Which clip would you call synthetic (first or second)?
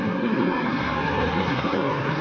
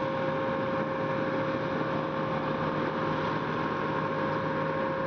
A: first